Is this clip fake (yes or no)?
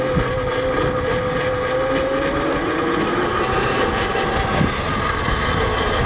no